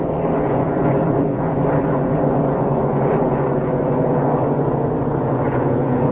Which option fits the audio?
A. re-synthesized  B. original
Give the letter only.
A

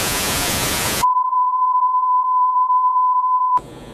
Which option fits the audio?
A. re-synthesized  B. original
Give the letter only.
A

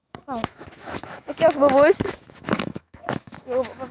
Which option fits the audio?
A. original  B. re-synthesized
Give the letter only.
B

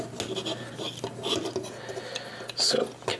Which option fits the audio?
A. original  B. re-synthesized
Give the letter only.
A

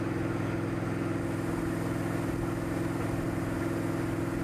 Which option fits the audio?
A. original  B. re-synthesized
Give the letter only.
A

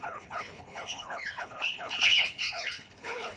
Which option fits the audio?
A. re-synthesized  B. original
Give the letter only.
A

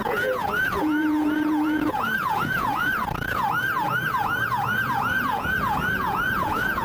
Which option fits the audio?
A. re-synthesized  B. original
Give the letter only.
A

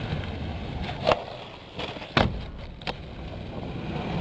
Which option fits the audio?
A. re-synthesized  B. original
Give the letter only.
B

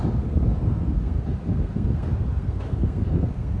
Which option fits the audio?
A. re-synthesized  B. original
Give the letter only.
A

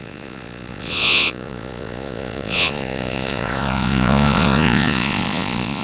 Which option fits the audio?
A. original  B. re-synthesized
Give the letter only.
B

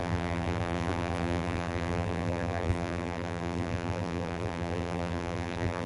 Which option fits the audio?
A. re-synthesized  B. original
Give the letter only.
A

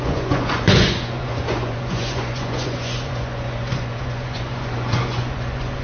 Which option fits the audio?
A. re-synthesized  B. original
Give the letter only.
A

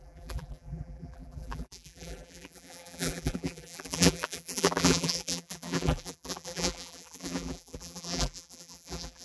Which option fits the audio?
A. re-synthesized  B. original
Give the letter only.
A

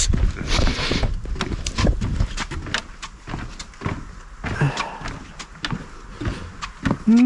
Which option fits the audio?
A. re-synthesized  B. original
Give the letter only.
B